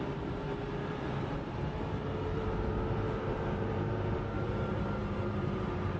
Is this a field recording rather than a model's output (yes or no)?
no